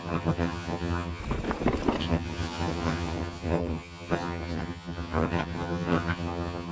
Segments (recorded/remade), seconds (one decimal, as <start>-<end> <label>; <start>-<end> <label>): 0.0-1.2 remade; 1.2-2.0 recorded; 2.0-6.7 remade